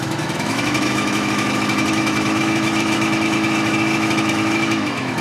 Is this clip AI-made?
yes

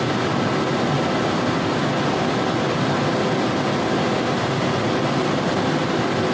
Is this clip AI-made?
no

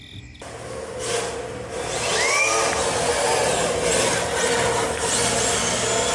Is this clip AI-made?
no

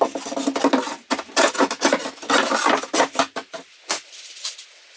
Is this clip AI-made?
no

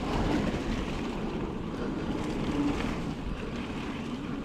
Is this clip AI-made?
yes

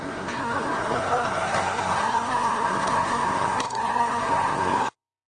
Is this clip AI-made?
yes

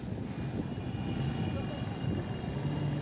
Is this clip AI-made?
no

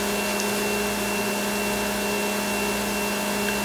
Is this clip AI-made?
no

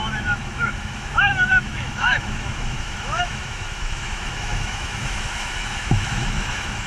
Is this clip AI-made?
yes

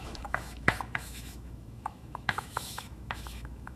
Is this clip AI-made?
yes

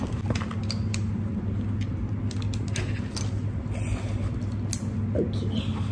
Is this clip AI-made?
no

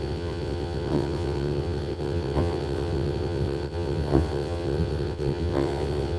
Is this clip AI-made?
yes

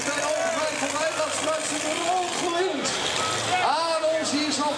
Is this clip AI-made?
no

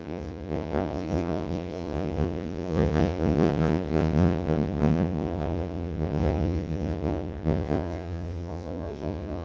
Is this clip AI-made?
yes